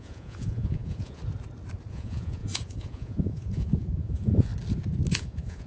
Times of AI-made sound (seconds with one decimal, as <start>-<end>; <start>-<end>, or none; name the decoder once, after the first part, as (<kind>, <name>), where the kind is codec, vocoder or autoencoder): 0.0-1.2 (vocoder, Vocos); 1.9-4.5; 5.1-5.7